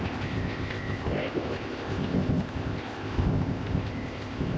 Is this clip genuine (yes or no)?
no